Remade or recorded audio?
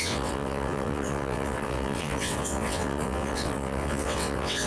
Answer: remade